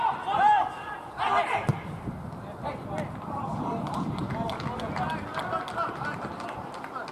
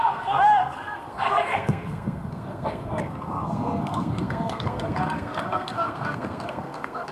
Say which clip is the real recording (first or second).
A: first